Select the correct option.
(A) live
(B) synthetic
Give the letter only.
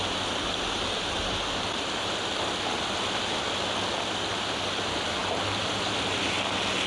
A